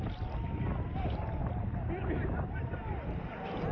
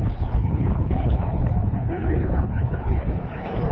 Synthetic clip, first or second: second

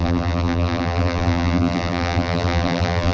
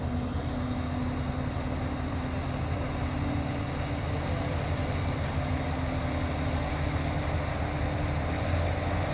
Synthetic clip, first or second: first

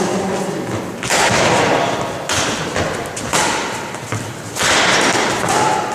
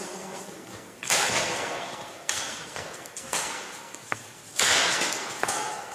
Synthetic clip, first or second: second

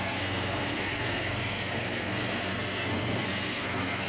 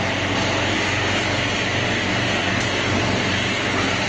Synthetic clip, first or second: first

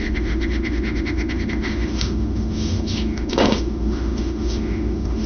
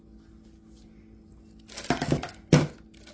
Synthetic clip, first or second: first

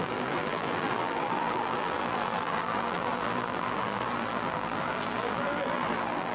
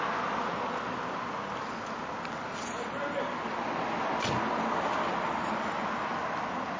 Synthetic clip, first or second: first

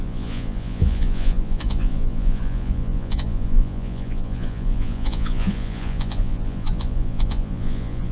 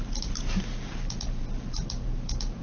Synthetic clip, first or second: first